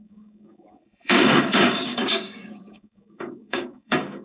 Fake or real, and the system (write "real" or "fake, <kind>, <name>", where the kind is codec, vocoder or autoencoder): fake, codec, DAC